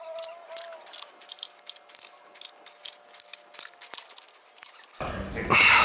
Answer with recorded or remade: recorded